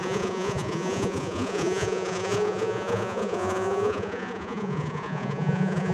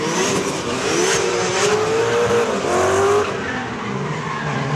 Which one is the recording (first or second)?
second